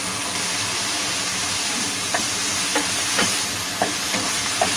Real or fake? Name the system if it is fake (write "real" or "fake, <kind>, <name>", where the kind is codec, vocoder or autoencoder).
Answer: real